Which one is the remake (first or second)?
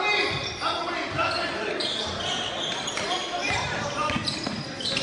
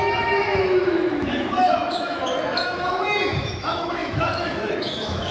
second